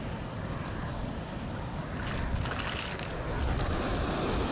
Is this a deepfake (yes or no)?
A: no